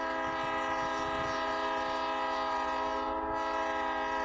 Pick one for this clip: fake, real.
real